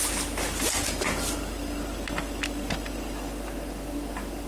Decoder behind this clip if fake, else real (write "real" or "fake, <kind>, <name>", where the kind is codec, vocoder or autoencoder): real